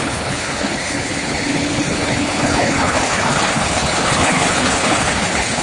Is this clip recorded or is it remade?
remade